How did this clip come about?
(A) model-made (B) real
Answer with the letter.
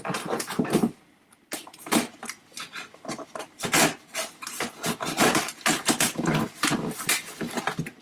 A